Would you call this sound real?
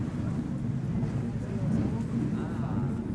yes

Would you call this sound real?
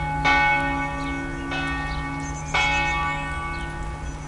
yes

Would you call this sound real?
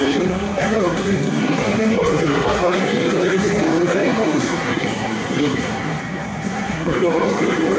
no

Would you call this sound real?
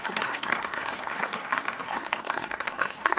no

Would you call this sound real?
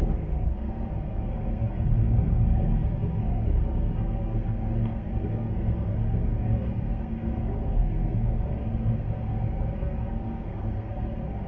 no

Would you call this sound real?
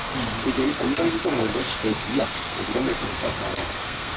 no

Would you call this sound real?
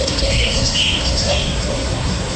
no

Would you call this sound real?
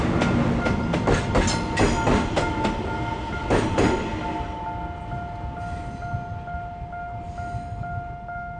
yes